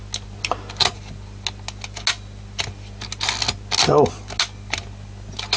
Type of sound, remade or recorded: recorded